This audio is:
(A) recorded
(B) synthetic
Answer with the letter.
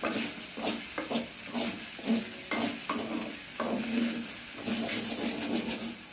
A